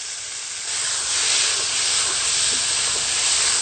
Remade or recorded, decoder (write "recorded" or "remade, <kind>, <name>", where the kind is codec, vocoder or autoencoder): recorded